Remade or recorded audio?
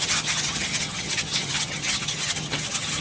remade